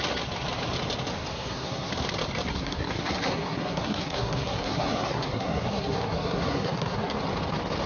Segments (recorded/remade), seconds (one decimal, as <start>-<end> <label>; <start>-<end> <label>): 0.0-1.3 recorded; 1.3-1.9 remade; 1.9-2.5 recorded; 2.5-7.2 remade; 7.2-7.9 recorded